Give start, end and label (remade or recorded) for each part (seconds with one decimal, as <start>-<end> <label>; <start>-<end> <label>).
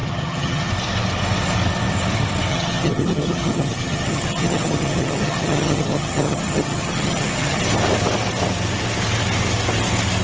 0.0-0.7 remade; 0.7-2.5 recorded; 2.5-7.6 remade; 7.6-10.2 recorded